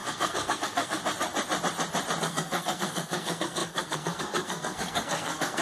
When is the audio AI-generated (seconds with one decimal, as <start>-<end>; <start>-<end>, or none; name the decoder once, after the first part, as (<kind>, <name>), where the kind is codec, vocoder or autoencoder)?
0.0-1.0 (codec, SNAC); 2.2-5.6